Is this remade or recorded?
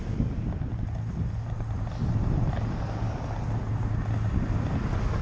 recorded